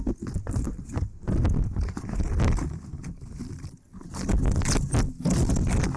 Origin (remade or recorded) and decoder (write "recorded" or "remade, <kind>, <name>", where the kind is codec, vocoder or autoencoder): recorded